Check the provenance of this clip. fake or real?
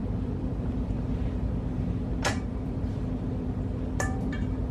fake